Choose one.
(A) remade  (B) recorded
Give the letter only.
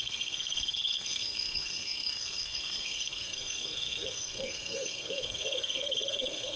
A